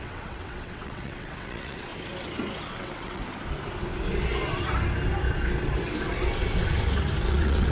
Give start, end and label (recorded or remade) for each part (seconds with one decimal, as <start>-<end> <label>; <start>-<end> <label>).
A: 0.0-1.9 remade; 1.9-2.7 recorded; 2.7-3.2 remade; 3.2-7.3 recorded; 7.3-7.7 remade